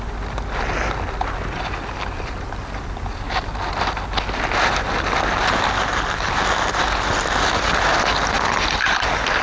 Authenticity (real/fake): real